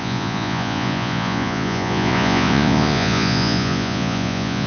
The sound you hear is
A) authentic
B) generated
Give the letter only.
B